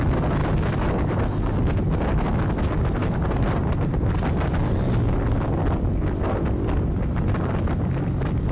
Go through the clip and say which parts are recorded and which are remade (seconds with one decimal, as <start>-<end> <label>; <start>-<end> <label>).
0.0-3.0 recorded; 3.0-4.0 remade; 4.0-8.5 recorded